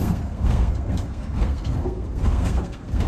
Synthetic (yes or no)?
yes